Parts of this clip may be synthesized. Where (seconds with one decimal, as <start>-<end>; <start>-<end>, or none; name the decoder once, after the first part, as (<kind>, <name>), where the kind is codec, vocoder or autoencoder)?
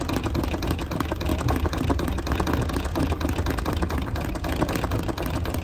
1.3-2.3 (vocoder, BigVGAN v2); 2.9-3.5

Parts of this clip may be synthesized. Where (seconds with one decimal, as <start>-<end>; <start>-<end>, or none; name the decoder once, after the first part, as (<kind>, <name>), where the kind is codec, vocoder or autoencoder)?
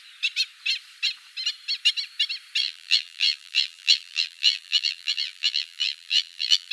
2.6-6.7 (vocoder, BigVGAN v2)